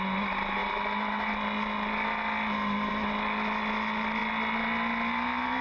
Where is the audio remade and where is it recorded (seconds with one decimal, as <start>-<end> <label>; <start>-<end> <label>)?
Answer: 0.0-5.6 recorded